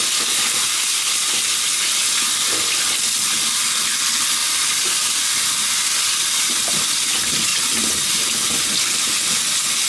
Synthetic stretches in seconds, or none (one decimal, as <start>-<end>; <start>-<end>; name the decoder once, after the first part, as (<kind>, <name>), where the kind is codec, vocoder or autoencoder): 4.4-7.1 (vocoder, BigVGAN v2); 7.5-8.1